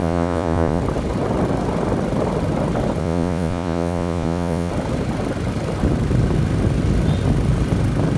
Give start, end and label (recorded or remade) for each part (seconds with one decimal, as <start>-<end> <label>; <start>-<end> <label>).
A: 0.0-0.8 remade; 0.8-3.0 recorded; 3.0-4.7 remade; 4.7-8.2 recorded